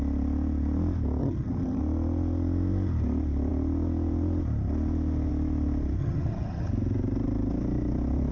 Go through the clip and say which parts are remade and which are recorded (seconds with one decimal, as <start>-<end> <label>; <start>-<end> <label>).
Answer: 0.0-1.2 recorded; 1.2-1.8 remade; 1.8-6.0 recorded; 6.0-6.7 remade; 6.7-8.3 recorded